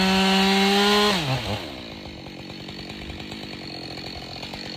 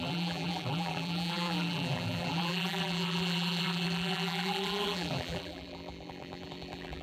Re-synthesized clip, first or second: second